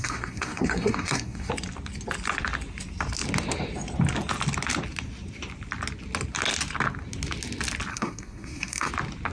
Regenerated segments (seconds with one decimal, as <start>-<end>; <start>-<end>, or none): 0.0-1.5; 7.9-8.9